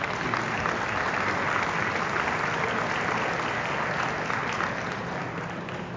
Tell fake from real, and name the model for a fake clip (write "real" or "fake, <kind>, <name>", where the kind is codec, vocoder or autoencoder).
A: real